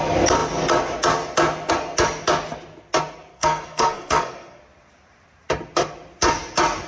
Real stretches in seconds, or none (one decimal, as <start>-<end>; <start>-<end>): 0.0-3.3; 4.6-6.9